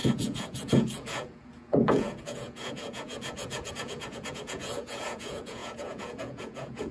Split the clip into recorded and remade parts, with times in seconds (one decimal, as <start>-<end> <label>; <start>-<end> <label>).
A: 0.0-6.9 remade